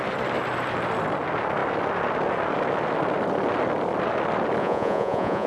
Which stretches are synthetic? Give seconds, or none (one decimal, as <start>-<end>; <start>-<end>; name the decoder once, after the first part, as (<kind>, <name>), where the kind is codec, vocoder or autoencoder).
4.6-5.5 (vocoder, Vocos)